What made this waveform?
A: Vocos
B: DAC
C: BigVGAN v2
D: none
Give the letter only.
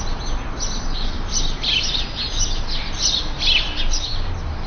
D